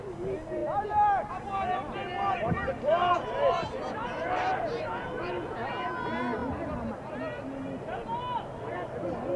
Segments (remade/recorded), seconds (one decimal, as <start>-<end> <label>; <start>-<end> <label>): 0.0-2.1 recorded; 2.1-5.5 remade; 5.5-9.4 recorded